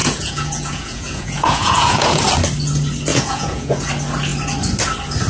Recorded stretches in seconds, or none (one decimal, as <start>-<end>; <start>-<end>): 2.2-3.1; 3.9-5.3